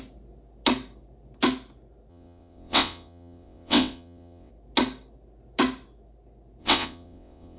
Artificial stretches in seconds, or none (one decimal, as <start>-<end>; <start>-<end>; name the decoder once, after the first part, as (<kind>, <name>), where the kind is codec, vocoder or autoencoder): 2.1-4.5 (vocoder, WaveNeXt); 6.6-7.6